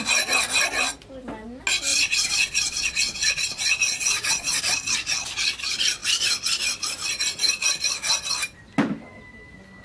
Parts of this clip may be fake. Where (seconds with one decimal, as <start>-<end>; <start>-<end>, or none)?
1.9-4.6